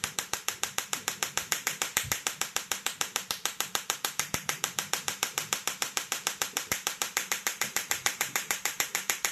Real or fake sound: fake